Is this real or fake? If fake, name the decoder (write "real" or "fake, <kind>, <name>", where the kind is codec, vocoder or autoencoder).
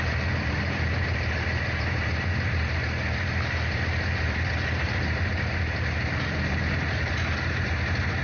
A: fake, vocoder, BigVGAN v2